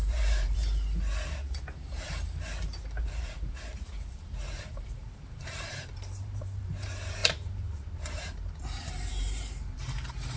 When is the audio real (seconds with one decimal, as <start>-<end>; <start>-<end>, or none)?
0.6-3.0